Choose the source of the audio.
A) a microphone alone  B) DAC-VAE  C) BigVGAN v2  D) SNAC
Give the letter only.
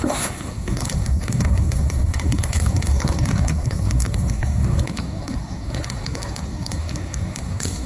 D